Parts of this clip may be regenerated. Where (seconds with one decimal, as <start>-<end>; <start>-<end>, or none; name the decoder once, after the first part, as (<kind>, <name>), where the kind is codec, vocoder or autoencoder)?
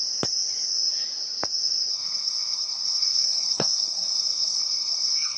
1.9-5.4 (codec, SNAC)